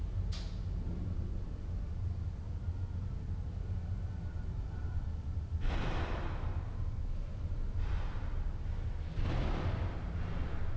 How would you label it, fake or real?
real